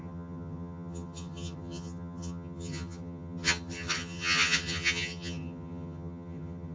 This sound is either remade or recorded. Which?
remade